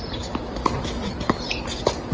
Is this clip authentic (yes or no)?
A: yes